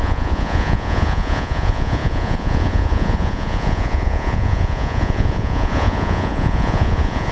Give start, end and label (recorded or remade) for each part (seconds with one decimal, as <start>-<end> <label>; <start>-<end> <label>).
0.0-7.3 remade